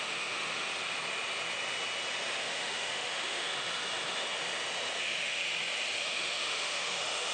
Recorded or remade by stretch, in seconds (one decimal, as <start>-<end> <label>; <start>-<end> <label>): 0.0-0.7 remade; 0.7-2.4 recorded; 2.4-3.5 remade; 3.5-5.0 recorded; 5.0-5.4 remade; 5.4-6.0 recorded; 6.0-7.3 remade